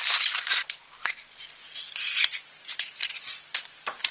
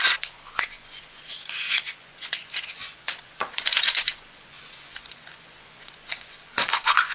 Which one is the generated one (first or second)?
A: second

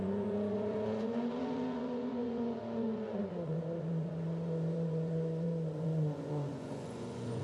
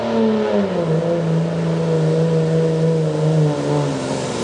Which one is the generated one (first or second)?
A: first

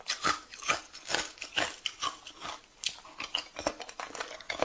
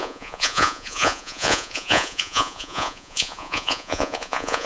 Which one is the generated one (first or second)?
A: second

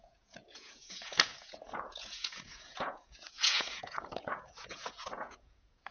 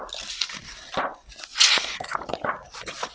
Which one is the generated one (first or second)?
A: first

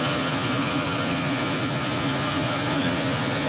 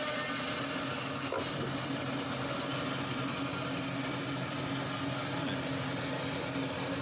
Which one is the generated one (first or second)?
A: first